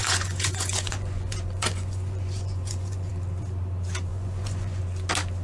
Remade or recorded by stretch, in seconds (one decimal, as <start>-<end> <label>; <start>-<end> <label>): 0.0-3.1 remade; 3.1-4.1 recorded; 4.1-4.8 remade; 4.8-5.4 recorded

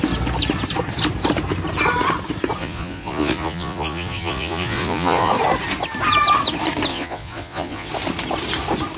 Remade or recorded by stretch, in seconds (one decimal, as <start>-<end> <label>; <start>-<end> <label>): 0.0-2.6 recorded; 2.6-5.3 remade; 5.3-6.9 recorded; 6.9-7.9 remade; 7.9-9.0 recorded

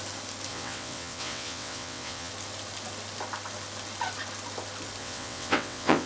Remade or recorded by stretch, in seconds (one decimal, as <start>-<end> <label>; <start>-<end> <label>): 0.0-0.5 recorded; 0.5-2.3 remade; 2.3-5.0 recorded; 5.0-6.1 remade

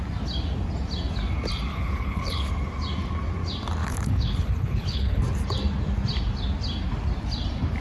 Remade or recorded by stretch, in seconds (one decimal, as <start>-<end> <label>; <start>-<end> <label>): 0.0-1.7 recorded; 1.7-2.5 remade; 2.5-3.8 recorded; 3.8-5.2 remade; 5.2-7.8 recorded

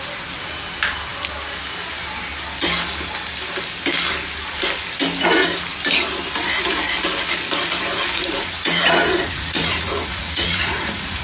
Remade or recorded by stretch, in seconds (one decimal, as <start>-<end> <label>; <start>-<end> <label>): 0.0-7.9 recorded; 7.9-11.2 remade

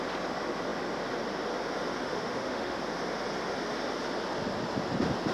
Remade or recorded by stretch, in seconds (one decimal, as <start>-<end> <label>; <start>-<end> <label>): 0.0-2.0 recorded; 2.0-2.8 remade; 2.8-5.3 recorded